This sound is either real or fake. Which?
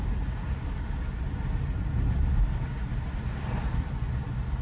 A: real